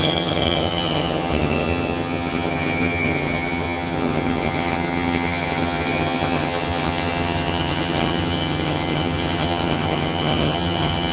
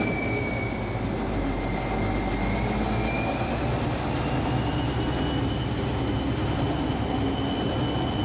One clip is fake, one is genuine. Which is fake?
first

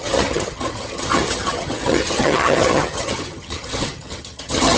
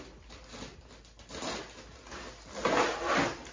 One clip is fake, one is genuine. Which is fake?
first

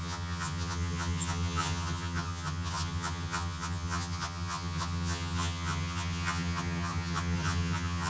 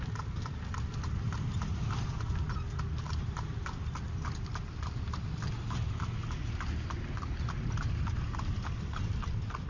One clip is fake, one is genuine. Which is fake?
first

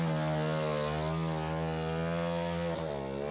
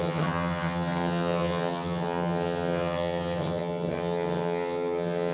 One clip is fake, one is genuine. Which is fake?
second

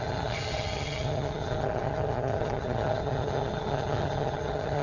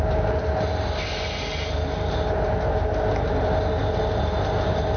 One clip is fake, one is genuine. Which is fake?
first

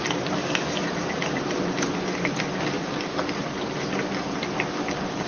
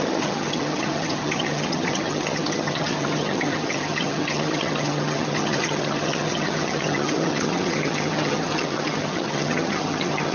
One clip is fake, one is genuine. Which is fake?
second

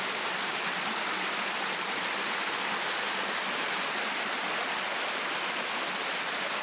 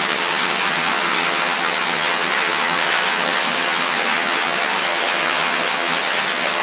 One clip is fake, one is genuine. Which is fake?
second